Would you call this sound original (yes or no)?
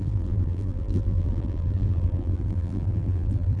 no